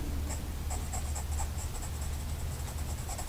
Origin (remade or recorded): recorded